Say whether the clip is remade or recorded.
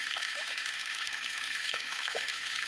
remade